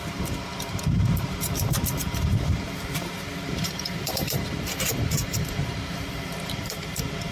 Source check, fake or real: fake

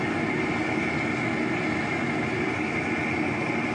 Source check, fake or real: real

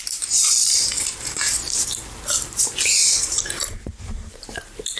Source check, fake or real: fake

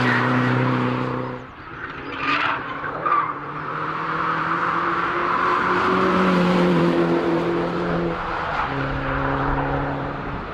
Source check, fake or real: fake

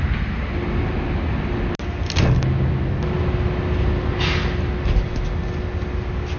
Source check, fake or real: real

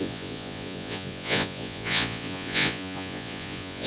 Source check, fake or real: fake